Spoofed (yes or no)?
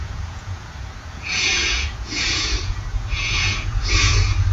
yes